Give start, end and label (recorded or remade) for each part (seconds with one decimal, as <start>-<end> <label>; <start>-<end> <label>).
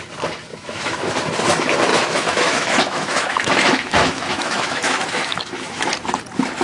0.0-0.5 recorded; 0.5-1.1 remade; 1.1-1.9 recorded; 1.9-5.9 remade; 5.9-6.6 recorded